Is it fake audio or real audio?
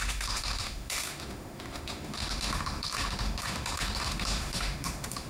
fake